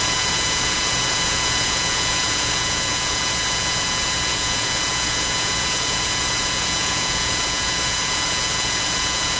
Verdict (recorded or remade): remade